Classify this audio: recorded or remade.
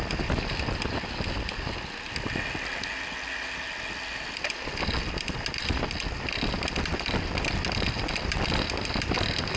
recorded